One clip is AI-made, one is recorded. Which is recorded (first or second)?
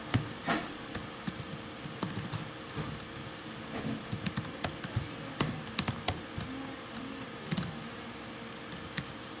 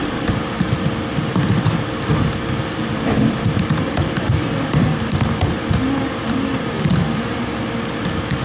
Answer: first